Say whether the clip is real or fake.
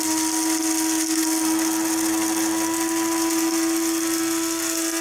real